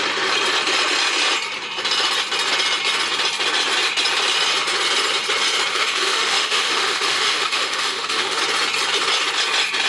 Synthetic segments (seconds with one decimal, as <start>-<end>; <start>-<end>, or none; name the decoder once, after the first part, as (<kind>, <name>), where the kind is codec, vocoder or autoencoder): 5.7-8.4 (autoencoder, DAC-VAE)